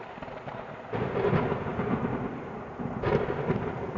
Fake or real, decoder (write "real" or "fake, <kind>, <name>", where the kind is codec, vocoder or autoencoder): real